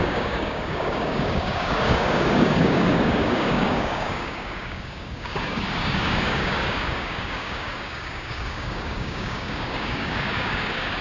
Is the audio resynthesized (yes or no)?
yes